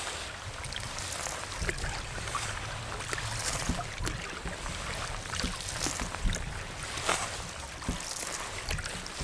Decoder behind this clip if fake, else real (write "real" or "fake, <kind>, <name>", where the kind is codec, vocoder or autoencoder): real